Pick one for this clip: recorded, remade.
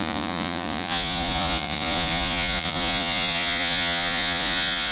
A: remade